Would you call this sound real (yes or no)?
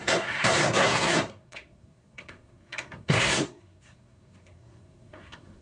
no